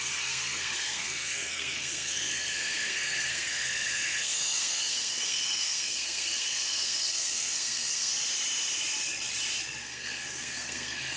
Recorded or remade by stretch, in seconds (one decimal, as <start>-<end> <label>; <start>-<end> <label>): 0.0-8.1 remade; 8.1-9.8 recorded; 9.8-11.2 remade